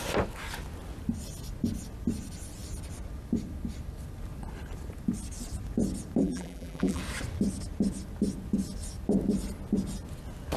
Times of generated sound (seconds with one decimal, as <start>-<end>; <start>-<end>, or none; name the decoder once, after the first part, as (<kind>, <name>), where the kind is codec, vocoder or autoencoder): 6.2-7.0 (vocoder, BigVGAN v2)